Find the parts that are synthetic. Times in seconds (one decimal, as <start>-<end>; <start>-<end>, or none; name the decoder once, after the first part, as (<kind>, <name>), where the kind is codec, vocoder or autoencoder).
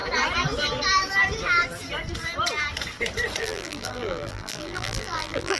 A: 3.4-5.6 (vocoder, BigVGAN v2)